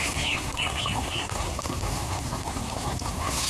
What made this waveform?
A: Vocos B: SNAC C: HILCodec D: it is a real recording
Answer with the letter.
B